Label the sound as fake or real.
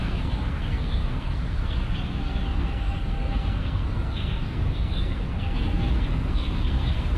fake